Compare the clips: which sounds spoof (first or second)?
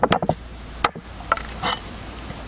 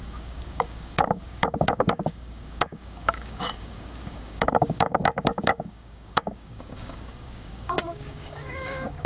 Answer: second